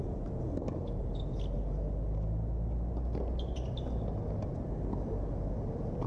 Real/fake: real